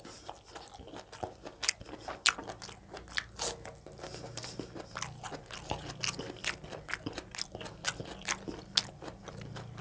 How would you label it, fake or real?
real